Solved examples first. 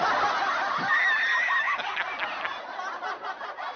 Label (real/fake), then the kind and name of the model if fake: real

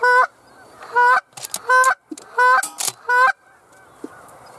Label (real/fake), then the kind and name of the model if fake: real